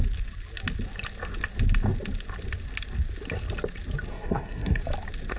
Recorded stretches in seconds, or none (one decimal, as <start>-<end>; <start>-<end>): 0.0-4.1; 4.8-5.4